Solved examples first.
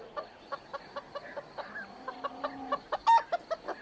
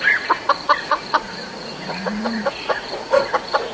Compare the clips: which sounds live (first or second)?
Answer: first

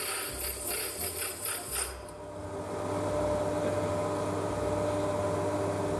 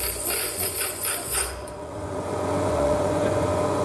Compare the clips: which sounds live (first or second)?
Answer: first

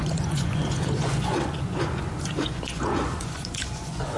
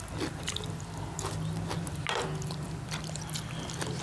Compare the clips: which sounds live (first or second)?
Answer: second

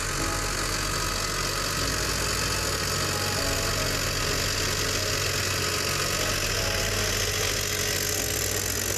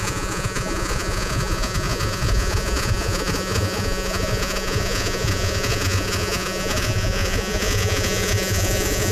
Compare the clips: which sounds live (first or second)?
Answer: first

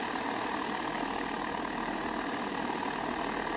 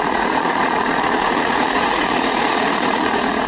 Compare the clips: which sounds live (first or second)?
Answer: first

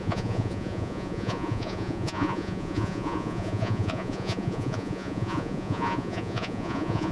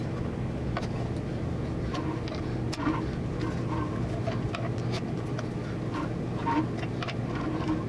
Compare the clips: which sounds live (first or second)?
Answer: second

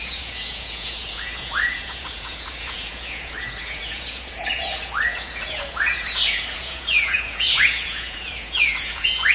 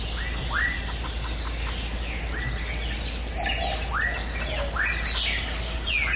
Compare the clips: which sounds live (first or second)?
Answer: second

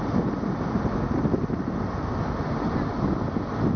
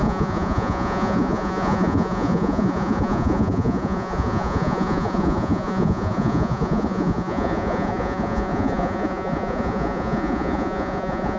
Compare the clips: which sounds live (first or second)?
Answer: first